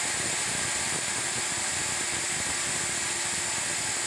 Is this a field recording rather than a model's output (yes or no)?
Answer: yes